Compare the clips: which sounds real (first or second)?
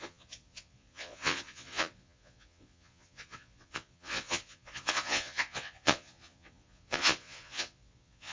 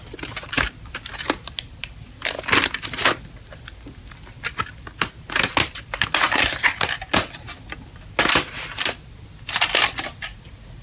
second